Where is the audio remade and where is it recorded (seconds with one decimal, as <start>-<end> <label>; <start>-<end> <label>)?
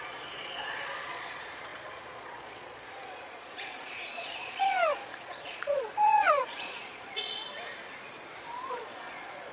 0.0-7.4 remade; 7.4-8.4 recorded; 8.4-9.5 remade